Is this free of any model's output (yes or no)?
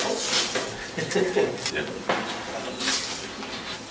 yes